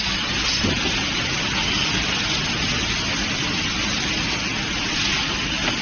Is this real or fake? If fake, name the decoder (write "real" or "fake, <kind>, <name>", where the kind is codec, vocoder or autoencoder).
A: real